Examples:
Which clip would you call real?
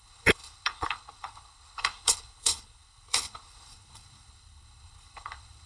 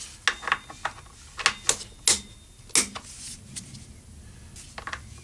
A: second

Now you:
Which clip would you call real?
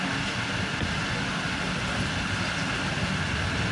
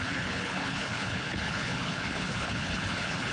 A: first